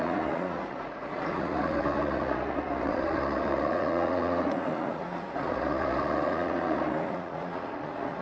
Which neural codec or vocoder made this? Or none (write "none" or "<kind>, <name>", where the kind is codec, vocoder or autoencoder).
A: vocoder, Vocos